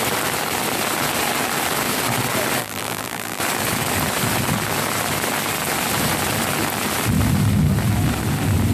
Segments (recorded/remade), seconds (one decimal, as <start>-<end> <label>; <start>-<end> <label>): 0.0-2.6 recorded; 2.6-3.4 remade; 3.4-8.7 recorded